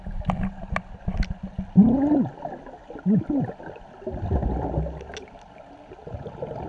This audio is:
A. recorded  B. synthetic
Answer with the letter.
A